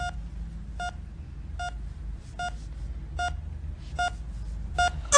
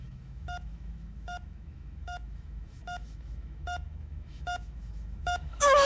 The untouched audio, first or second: first